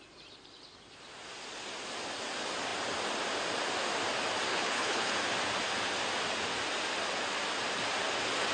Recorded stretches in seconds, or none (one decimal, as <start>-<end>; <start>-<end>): 0.0-4.5; 5.1-8.5